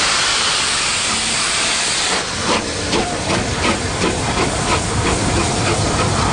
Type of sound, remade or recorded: remade